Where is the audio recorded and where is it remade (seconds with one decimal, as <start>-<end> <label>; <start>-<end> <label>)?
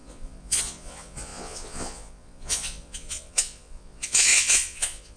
0.0-5.2 remade